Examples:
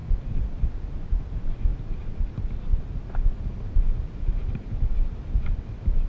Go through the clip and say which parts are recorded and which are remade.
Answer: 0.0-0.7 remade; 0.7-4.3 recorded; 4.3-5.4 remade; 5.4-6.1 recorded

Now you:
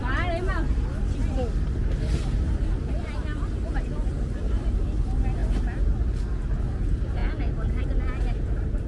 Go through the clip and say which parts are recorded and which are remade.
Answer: 0.0-8.9 recorded

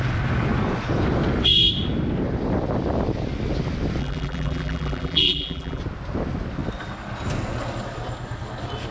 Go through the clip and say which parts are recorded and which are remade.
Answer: 0.0-4.0 recorded; 4.0-5.8 remade; 5.8-8.9 recorded

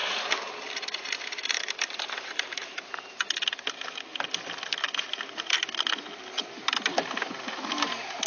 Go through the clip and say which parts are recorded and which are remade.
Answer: 0.0-2.8 remade; 2.8-8.3 recorded